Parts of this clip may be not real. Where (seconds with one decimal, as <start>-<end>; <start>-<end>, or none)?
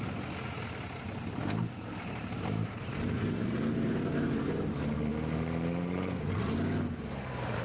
1.6-4.1; 5.1-6.3